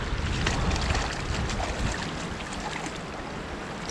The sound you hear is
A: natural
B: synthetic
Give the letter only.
A